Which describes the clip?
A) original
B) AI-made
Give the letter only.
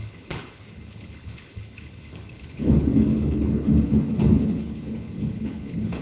B